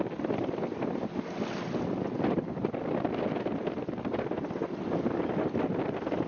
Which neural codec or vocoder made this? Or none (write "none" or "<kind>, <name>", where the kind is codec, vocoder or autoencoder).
none